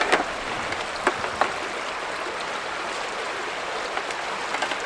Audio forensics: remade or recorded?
recorded